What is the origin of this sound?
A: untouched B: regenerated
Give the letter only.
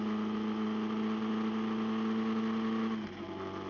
A